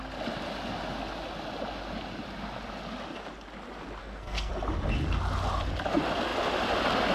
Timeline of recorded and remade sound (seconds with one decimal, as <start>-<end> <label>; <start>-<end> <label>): 0.0-4.0 recorded; 4.0-4.5 remade; 4.5-7.1 recorded